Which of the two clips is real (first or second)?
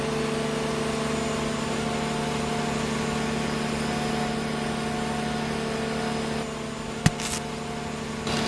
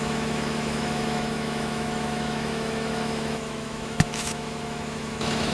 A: first